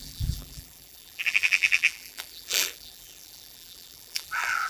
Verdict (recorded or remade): remade